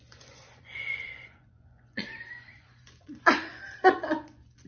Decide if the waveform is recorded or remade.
remade